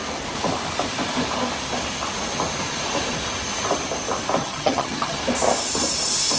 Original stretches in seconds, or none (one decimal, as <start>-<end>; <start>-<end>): 0.0-4.4; 5.2-6.4